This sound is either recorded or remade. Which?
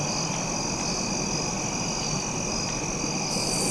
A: recorded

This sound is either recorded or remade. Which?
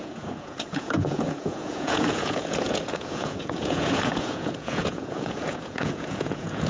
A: remade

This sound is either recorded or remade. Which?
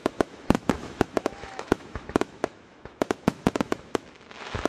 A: remade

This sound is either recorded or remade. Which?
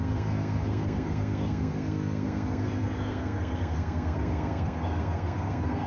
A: remade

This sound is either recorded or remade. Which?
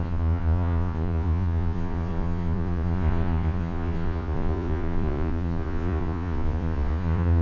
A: remade